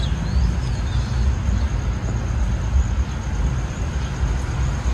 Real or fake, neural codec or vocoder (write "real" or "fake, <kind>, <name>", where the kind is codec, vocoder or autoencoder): real